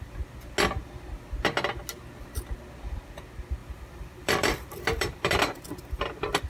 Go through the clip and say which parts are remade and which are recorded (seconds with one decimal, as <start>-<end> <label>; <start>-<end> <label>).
0.0-3.6 recorded; 3.6-6.0 remade; 6.0-6.5 recorded